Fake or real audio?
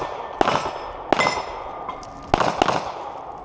real